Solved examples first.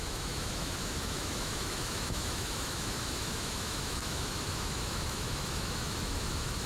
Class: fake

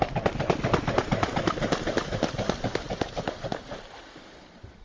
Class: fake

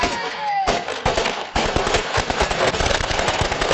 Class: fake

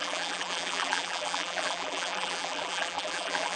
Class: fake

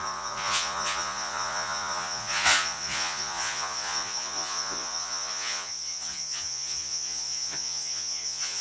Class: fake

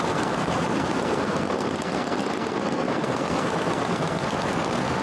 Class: fake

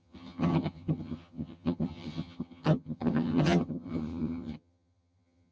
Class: fake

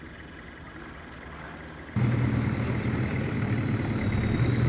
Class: real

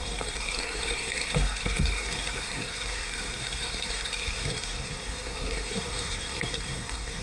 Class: fake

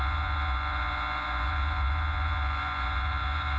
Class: fake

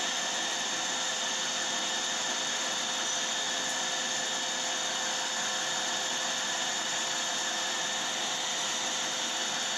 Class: real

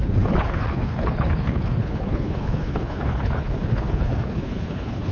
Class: fake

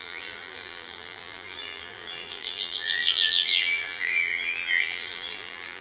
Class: fake